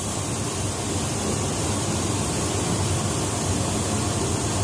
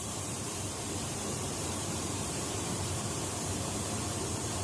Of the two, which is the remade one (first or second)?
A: second